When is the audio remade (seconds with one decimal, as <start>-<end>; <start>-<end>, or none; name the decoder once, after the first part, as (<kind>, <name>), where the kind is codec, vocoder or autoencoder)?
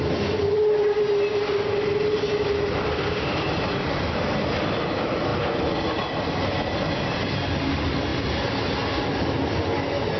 none